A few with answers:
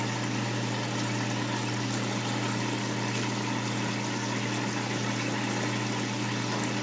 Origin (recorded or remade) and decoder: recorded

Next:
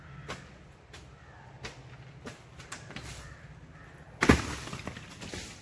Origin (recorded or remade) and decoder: recorded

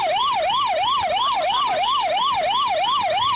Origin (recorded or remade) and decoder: recorded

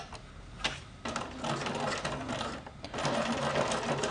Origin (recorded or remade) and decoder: recorded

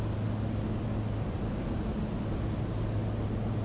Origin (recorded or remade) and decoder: recorded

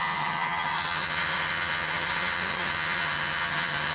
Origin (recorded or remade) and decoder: remade, vocoder, HiFi-GAN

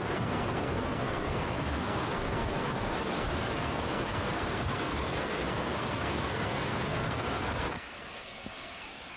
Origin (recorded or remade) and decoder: remade, codec, SNAC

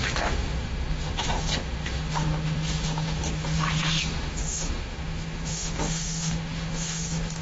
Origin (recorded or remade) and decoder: remade, autoencoder, DAC-VAE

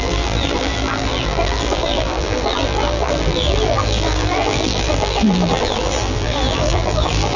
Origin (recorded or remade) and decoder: remade, vocoder, BigVGAN v2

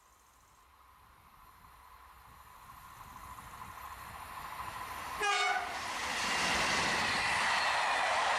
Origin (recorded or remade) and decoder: recorded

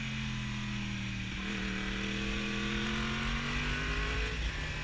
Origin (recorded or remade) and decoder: recorded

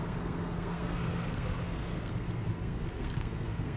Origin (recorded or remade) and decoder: remade, codec, SNAC